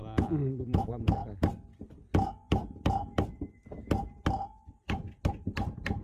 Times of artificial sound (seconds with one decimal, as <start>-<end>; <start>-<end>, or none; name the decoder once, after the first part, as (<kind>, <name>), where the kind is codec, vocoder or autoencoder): 0.6-1.2 (vocoder, BigVGAN v2); 4.8-6.0